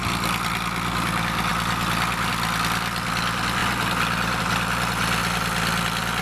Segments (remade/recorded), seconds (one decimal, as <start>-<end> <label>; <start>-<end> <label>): 0.0-6.2 recorded